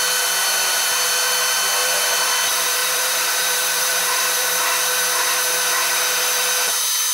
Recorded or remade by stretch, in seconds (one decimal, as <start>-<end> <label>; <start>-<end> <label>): 0.0-1.8 recorded; 1.8-2.3 remade; 2.3-2.8 recorded; 2.8-4.7 remade; 4.7-7.1 recorded